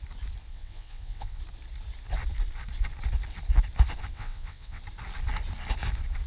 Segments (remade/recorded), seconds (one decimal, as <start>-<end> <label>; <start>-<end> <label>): 0.0-0.5 recorded; 0.5-1.4 remade; 1.4-4.1 recorded; 4.1-4.8 remade; 4.8-6.3 recorded